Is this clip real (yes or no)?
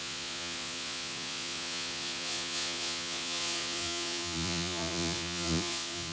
no